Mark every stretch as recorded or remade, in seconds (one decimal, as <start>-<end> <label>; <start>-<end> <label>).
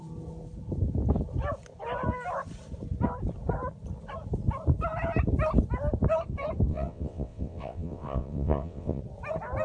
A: 0.0-6.7 recorded; 6.7-9.0 remade; 9.0-9.6 recorded